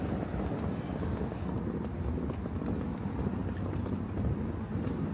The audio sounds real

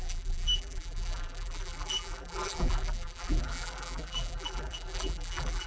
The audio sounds fake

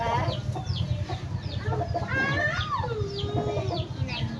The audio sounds real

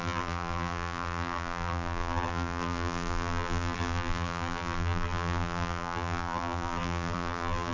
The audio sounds fake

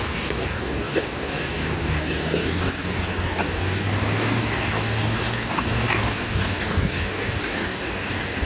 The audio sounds fake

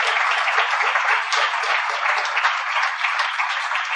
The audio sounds fake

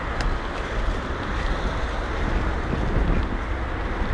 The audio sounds real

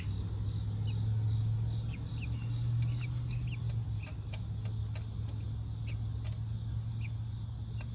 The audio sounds real